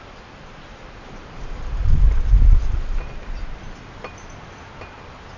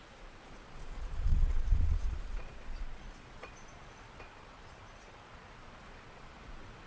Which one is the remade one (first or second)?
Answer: second